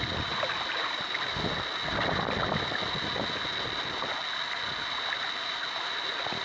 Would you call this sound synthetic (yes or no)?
no